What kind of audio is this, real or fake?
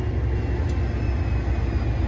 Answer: real